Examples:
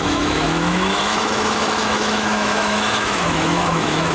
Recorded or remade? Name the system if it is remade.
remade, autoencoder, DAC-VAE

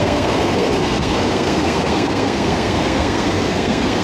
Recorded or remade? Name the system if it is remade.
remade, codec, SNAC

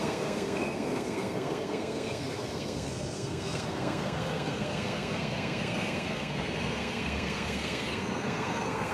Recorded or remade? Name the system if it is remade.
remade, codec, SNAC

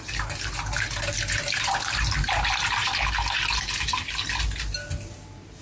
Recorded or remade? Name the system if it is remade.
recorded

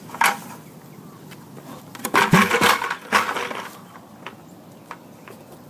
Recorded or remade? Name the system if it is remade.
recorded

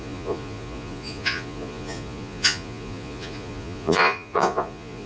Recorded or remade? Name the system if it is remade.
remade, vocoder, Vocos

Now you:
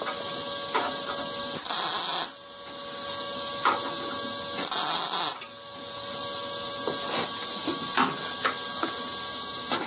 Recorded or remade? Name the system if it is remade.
recorded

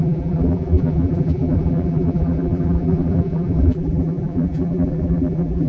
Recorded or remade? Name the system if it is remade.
remade, vocoder, BigVGAN v2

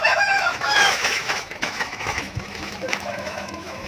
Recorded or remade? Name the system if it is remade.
remade, autoencoder, DAC-VAE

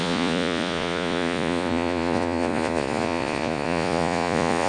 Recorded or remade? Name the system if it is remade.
remade, vocoder, Vocos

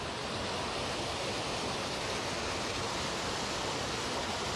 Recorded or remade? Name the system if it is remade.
recorded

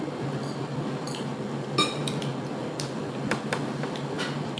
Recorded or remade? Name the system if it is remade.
recorded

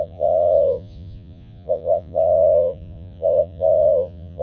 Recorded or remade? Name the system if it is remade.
remade, vocoder, Vocos